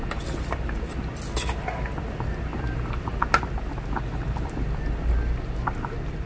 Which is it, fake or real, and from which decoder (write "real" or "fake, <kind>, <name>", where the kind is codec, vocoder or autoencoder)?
real